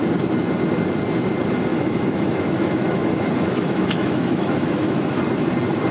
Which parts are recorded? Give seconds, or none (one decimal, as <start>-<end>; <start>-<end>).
0.0-1.7; 5.2-5.9